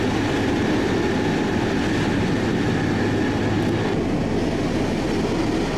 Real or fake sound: real